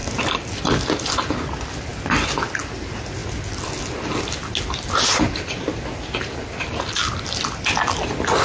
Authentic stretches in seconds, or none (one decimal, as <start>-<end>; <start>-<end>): 0.0-8.4

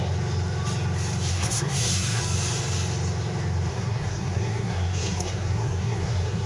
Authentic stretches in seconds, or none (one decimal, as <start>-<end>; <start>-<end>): 0.0-1.3; 2.2-3.7